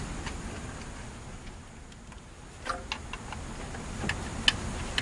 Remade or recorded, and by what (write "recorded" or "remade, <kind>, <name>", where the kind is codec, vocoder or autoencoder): recorded